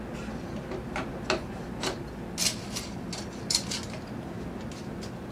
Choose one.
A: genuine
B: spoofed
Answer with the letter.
A